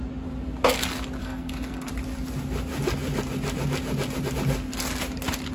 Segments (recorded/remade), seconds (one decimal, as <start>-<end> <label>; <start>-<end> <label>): 0.0-1.2 recorded; 1.2-1.9 remade; 1.9-5.5 recorded